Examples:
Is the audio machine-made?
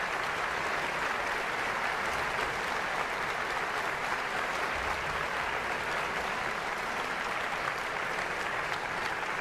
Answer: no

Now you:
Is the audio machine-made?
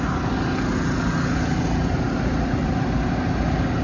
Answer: no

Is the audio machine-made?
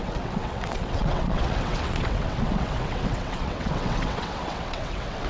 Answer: yes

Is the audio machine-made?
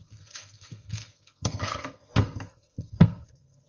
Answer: yes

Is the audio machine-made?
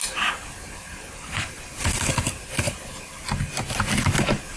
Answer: no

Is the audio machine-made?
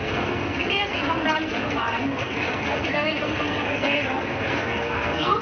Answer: yes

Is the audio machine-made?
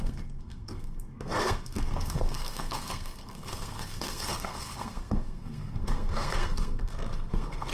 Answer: yes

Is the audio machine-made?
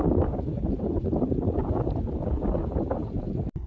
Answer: no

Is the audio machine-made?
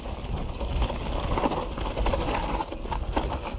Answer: no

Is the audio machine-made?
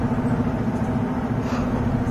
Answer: no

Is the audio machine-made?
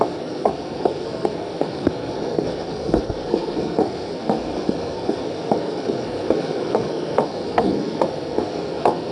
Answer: yes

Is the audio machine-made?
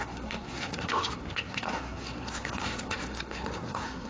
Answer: yes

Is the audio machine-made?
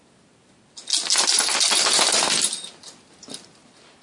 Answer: no